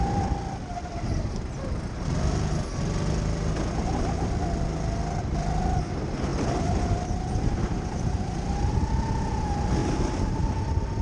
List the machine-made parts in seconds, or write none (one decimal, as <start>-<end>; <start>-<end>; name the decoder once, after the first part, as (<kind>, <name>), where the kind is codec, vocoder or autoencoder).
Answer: 6.3-8.7 (vocoder, BigVGAN v2); 9.8-10.4